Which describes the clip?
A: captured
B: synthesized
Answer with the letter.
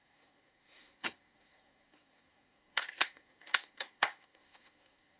B